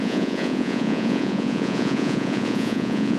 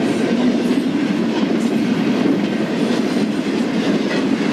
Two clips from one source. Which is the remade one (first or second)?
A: first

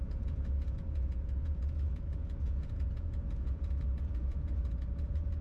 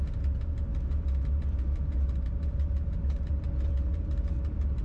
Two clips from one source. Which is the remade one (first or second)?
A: first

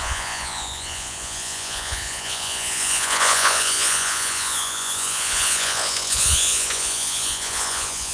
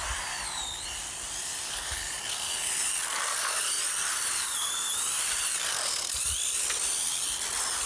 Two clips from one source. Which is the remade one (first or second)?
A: first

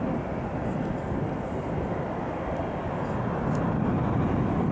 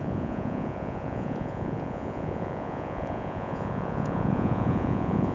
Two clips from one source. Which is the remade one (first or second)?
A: second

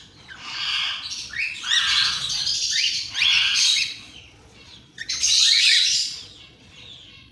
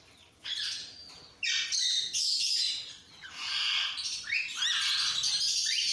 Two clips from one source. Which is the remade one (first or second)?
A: first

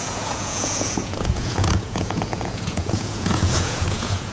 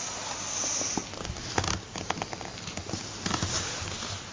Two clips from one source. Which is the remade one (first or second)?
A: first